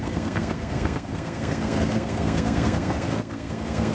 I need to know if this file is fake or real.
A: fake